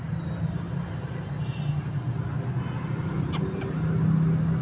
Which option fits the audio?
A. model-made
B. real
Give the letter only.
B